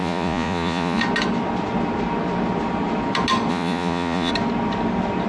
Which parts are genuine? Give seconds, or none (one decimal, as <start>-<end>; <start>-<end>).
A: 1.0-3.5; 4.3-5.3